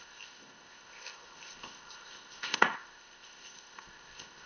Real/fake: fake